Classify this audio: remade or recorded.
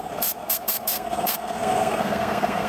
remade